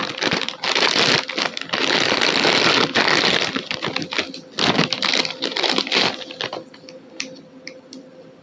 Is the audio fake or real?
real